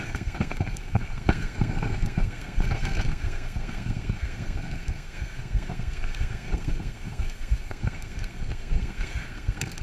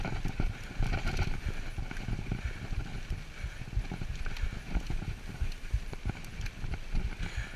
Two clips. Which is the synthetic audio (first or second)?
first